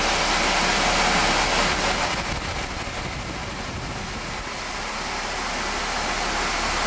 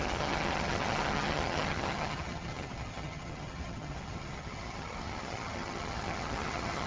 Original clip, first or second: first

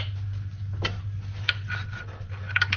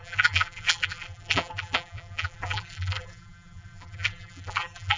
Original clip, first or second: first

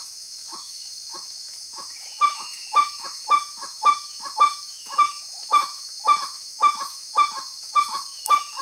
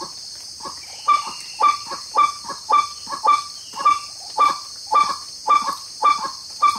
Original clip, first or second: second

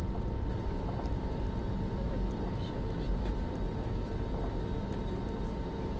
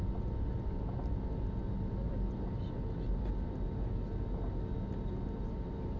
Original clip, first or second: second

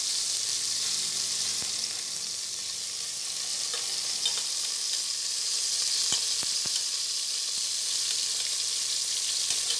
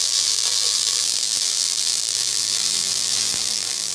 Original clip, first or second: first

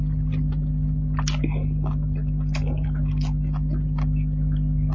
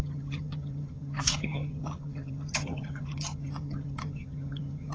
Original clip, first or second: first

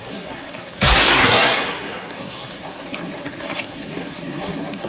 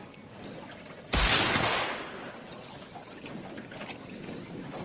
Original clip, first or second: second